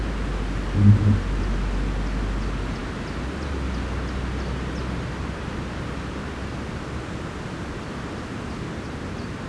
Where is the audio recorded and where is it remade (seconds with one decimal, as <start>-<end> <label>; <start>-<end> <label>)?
0.0-9.5 recorded